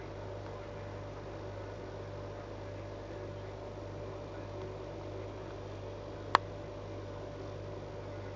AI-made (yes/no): no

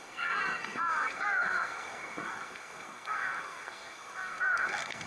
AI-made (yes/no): yes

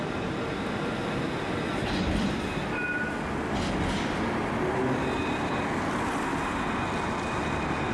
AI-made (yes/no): no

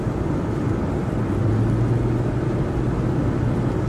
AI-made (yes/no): no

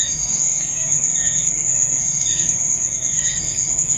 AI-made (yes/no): yes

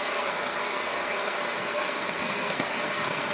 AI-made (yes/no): yes